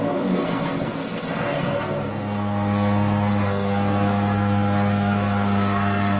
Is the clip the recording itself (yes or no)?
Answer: no